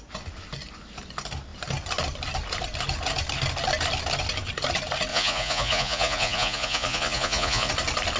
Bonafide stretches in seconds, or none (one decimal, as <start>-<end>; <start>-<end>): 0.0-5.1; 7.7-8.2